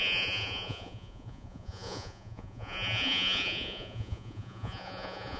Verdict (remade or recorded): remade